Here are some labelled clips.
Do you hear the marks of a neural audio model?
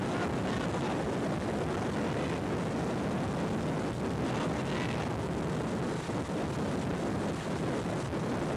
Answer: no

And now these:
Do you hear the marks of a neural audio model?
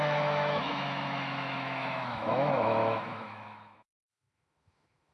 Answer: yes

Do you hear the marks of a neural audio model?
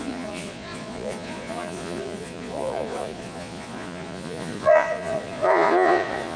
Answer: yes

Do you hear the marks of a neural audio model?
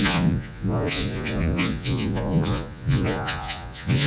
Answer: yes